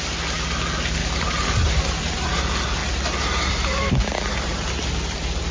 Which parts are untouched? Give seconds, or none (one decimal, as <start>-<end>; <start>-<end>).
0.0-1.0; 2.4-5.5